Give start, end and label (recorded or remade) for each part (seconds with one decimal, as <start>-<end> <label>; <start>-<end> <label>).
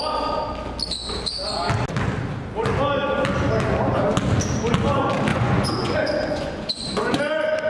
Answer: 0.0-5.3 recorded; 5.3-7.2 remade; 7.2-7.7 recorded